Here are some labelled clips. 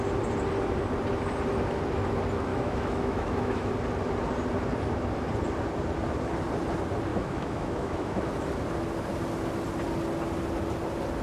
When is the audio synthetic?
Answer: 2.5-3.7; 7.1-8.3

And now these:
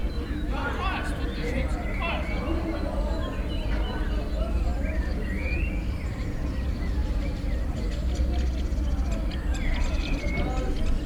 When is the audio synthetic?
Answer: 7.0-7.9

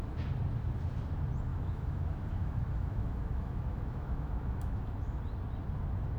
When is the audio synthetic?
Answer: 1.5-5.2

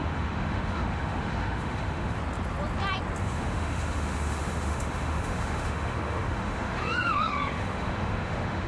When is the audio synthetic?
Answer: 0.0-2.2; 3.2-8.7

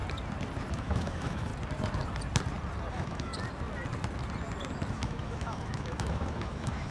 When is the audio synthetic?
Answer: 0.7-1.5; 2.9-3.3; 4.9-6.9

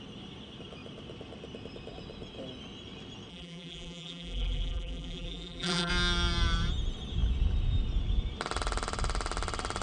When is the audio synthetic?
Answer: 3.3-5.9

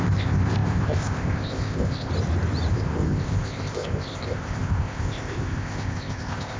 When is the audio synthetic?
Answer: 0.0-2.1; 2.7-6.6

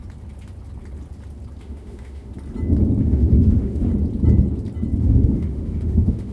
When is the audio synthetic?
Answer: 1.6-2.3; 3.0-3.9; 5.0-6.3